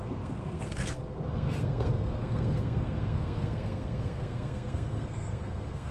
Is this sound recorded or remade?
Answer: remade